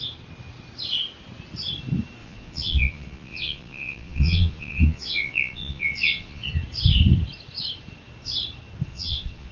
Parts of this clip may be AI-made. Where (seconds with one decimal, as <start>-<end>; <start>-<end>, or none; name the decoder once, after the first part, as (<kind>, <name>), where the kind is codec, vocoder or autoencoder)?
2.2-6.5 (vocoder, Vocos); 8.9-9.5